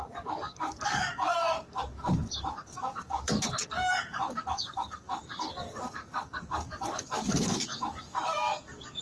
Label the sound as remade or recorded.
remade